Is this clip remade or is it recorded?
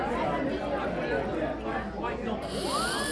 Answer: recorded